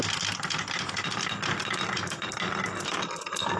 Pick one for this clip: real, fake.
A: real